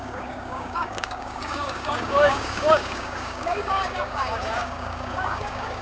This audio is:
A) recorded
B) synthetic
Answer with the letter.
B